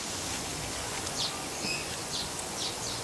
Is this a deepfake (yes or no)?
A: yes